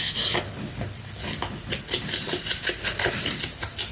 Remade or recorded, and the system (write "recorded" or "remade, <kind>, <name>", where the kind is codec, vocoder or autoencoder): recorded